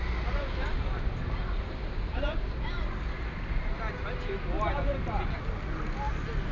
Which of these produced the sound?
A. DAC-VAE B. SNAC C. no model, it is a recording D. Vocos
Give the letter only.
C